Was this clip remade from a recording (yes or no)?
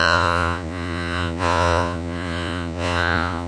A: yes